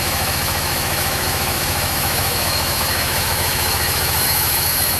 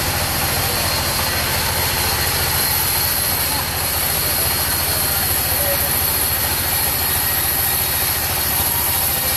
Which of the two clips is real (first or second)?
second